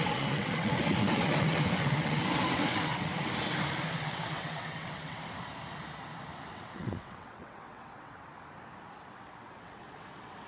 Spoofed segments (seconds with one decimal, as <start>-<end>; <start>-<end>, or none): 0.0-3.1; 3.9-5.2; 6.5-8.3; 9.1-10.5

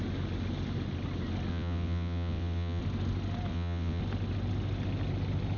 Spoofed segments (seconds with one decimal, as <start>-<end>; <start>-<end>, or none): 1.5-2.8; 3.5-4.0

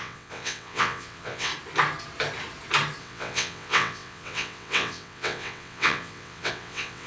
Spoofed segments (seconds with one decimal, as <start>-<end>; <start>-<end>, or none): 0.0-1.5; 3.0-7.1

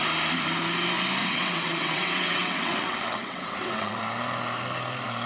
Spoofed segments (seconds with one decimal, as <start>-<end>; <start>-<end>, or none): 1.2-4.0

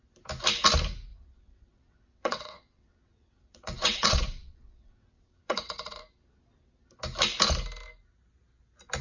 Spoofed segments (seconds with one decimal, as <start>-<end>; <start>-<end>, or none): 1.1-6.0

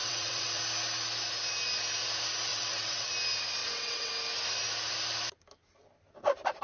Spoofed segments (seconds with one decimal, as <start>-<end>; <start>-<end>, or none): 0.0-0.6; 2.5-3.1; 3.6-4.1